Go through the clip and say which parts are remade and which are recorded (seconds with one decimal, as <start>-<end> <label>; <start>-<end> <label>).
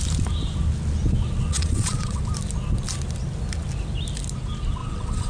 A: 0.0-1.5 recorded; 1.5-2.2 remade; 2.2-4.8 recorded; 4.8-5.3 remade